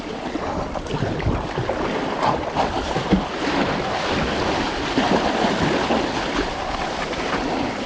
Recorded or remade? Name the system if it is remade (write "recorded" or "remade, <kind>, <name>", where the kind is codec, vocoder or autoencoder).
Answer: recorded